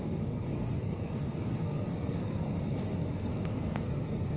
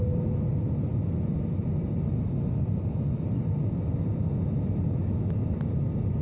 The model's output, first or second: first